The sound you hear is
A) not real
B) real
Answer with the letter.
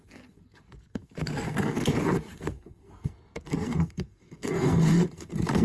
A